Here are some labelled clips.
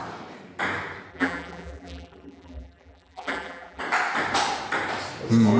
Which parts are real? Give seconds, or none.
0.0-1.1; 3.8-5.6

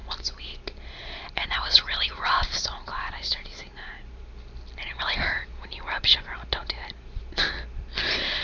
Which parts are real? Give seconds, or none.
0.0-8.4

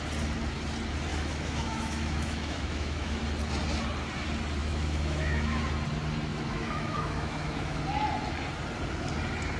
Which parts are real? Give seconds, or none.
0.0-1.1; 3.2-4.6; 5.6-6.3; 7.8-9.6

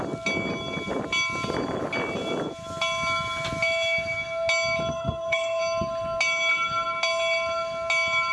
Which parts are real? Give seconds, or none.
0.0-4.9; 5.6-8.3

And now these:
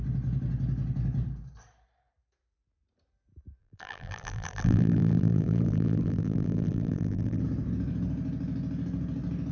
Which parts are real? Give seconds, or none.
0.0-3.6; 7.4-9.5